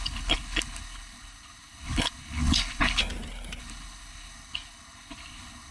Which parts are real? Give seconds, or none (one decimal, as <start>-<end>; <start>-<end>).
3.0-3.6